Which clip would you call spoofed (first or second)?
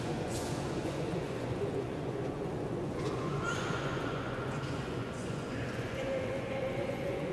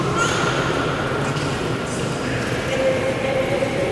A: first